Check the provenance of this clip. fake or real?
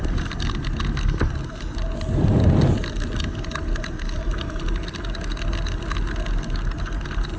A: real